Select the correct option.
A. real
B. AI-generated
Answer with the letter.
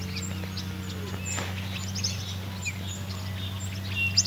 A